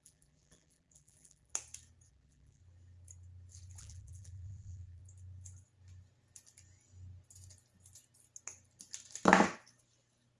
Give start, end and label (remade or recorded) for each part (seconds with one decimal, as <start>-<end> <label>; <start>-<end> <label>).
0.0-1.5 remade; 1.5-2.1 recorded; 2.1-2.6 remade; 2.6-3.8 recorded; 3.8-5.0 remade; 5.0-10.4 recorded